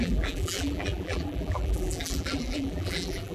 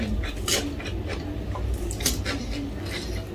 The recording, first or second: second